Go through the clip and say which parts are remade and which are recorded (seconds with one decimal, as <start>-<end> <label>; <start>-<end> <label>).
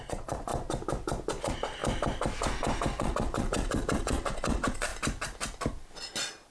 0.0-0.5 remade; 0.5-1.4 recorded; 1.4-1.8 remade; 1.8-3.0 recorded; 3.0-4.9 remade; 4.9-6.5 recorded